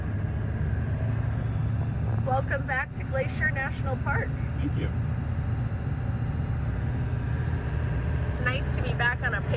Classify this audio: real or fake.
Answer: real